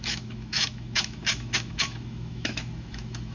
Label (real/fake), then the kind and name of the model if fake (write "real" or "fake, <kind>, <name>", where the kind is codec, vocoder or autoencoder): fake, autoencoder, DAC-VAE